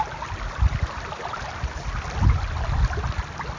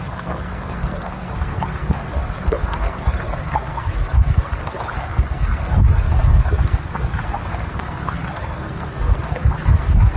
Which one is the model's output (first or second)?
second